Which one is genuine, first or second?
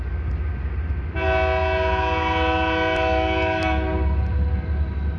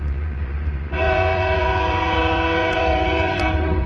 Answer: first